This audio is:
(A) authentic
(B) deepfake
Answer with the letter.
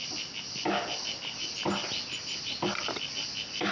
A